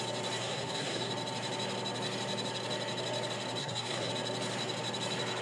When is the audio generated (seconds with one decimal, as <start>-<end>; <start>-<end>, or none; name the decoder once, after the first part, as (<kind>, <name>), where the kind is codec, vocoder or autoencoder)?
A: 0.4-1.1 (codec, SNAC); 3.6-4.1